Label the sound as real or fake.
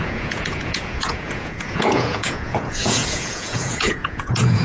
fake